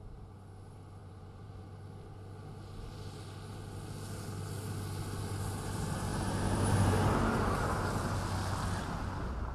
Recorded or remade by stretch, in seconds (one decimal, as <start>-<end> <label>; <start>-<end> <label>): 0.0-1.0 recorded; 1.0-1.6 remade; 1.6-9.5 recorded